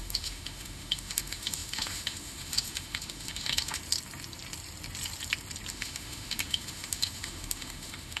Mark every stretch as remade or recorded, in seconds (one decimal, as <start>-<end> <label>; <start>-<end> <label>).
0.0-3.8 remade; 3.8-5.7 recorded; 5.7-8.2 remade